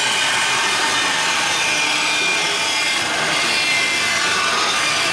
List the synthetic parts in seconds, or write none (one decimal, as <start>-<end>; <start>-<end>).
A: none